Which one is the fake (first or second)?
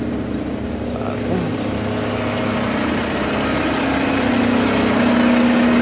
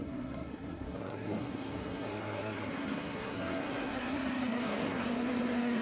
second